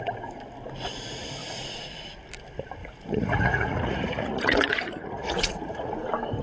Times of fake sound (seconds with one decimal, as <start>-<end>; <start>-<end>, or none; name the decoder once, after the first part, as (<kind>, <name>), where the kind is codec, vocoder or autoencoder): 1.4-1.9 (vocoder, Vocos); 2.8-5.9